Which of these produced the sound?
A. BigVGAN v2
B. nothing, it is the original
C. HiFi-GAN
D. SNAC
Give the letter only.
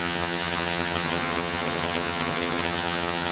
C